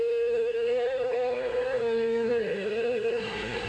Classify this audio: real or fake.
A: fake